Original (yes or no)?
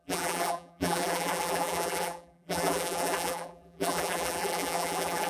no